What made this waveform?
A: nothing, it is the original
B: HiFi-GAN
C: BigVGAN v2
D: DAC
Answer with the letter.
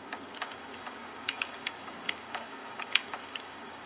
D